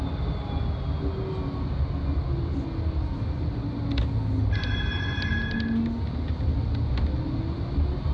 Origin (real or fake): real